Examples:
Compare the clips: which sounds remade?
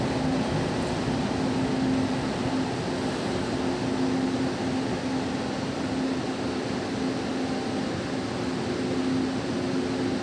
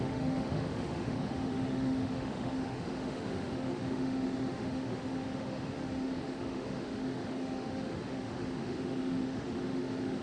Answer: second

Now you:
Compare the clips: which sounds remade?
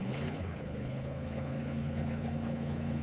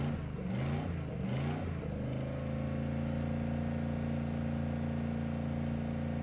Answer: first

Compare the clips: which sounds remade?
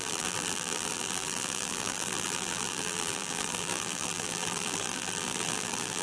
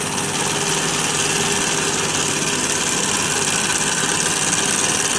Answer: first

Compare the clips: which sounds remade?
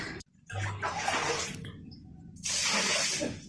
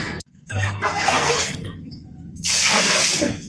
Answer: second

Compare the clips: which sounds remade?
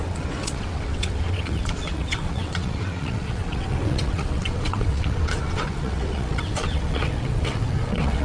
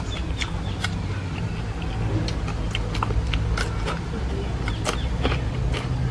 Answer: first